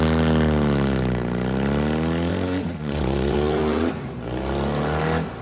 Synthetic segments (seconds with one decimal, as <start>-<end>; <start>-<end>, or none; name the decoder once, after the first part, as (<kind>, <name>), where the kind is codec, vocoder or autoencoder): 2.3-3.9 (vocoder, Vocos)